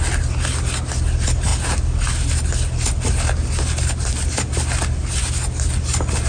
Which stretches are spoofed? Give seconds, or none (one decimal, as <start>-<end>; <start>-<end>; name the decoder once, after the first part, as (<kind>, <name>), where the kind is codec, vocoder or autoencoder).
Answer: none